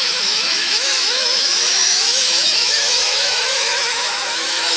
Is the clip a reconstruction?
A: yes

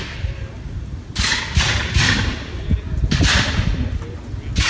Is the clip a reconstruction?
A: no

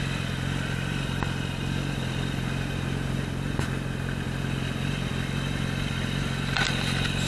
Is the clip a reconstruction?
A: no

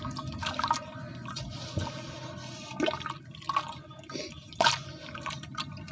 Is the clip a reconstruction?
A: no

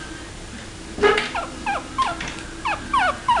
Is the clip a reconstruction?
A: no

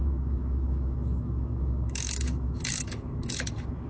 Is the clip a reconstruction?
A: yes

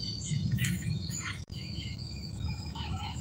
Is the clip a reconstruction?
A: yes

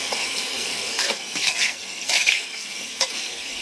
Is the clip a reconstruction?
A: yes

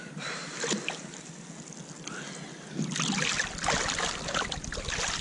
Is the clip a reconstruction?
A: no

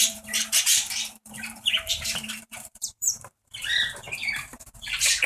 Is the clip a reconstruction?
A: yes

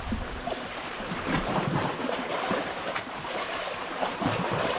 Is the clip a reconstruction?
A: yes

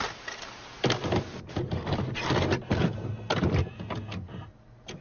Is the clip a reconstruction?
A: no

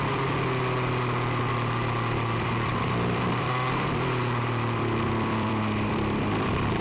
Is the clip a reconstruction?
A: yes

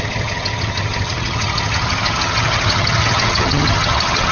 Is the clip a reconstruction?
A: yes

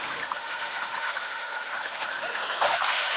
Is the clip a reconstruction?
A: yes